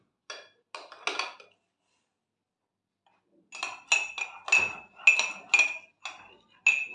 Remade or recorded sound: recorded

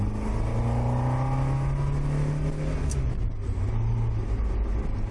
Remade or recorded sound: recorded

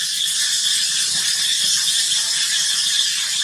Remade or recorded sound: recorded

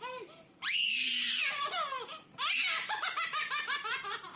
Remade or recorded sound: remade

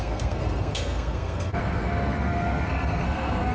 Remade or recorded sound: remade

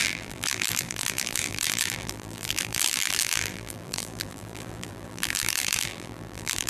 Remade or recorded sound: remade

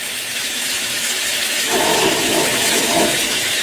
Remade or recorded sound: remade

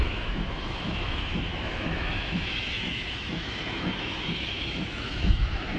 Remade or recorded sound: remade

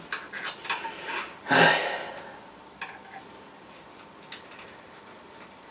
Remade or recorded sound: recorded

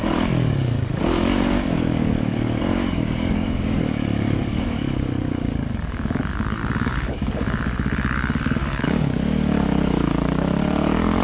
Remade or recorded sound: remade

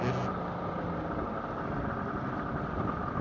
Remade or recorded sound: recorded